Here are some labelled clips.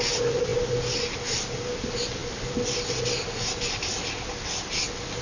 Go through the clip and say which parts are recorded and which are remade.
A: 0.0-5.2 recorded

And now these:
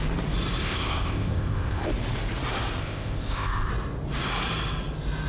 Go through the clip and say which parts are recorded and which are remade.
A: 0.0-0.6 recorded; 0.6-1.9 remade; 1.9-2.8 recorded; 2.8-3.7 remade; 3.7-5.3 recorded

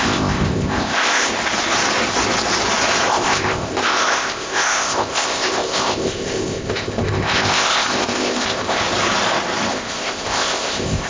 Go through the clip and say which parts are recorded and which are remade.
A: 0.0-1.3 remade; 1.3-3.1 recorded; 3.1-8.8 remade; 8.8-9.7 recorded; 9.7-11.1 remade

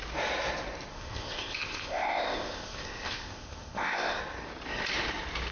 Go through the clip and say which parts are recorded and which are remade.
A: 0.0-0.9 recorded; 0.9-4.2 remade; 4.2-5.5 recorded

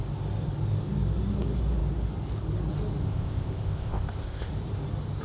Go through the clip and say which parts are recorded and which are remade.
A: 0.0-3.0 recorded; 3.0-4.5 remade; 4.5-5.2 recorded